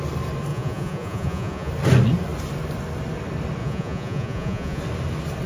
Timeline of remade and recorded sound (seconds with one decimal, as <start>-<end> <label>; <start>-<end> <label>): 0.0-0.5 recorded; 0.5-1.7 remade; 1.7-3.6 recorded; 3.6-4.8 remade; 4.8-5.5 recorded